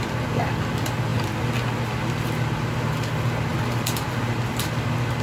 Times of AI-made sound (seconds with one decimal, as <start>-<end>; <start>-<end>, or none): none